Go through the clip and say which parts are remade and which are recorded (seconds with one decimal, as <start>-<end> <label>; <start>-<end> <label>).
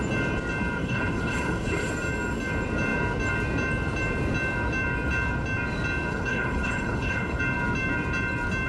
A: 0.0-0.8 recorded; 0.8-1.9 remade; 1.9-6.1 recorded; 6.1-7.4 remade; 7.4-8.7 recorded